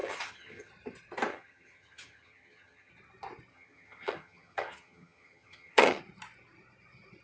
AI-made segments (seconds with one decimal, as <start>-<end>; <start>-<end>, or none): 0.0-0.7; 1.3-2.9; 3.5-6.0